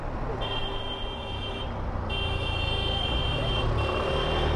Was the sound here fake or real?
real